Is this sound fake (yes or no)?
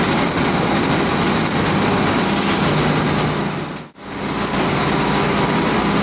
no